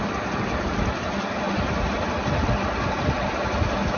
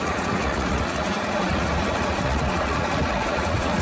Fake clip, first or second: second